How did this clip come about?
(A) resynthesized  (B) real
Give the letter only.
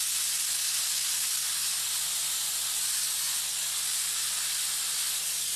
B